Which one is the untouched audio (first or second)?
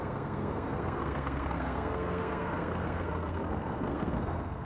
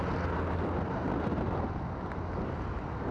second